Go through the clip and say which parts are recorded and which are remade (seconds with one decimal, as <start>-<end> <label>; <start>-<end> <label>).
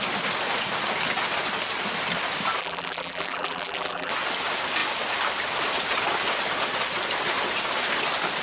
0.0-2.6 recorded; 2.6-4.1 remade; 4.1-8.4 recorded